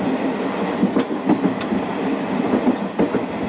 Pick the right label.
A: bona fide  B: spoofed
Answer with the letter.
A